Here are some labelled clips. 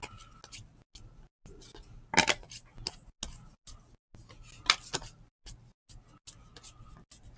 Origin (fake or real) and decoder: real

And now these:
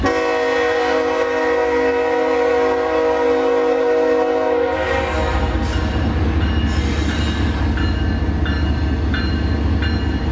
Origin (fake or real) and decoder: real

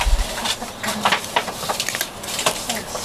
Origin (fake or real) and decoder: real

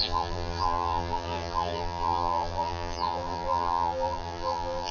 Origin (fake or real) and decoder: fake, vocoder, BigVGAN v2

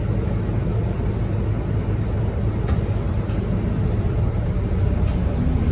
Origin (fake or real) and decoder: real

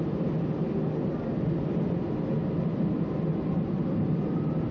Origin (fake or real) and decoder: real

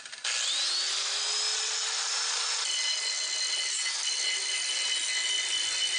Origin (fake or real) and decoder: real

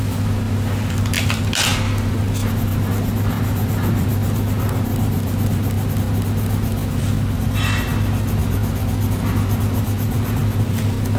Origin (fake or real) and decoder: real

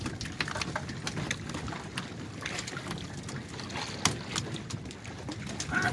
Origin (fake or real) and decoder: real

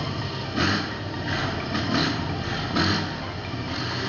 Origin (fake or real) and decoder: real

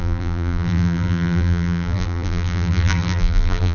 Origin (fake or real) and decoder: fake, vocoder, BigVGAN v2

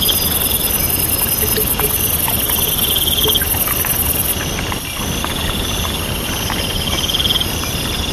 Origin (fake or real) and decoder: real